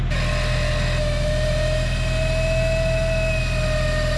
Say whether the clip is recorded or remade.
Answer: recorded